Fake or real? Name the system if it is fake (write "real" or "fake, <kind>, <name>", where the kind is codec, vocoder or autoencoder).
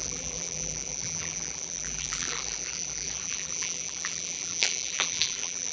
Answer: fake, vocoder, BigVGAN v2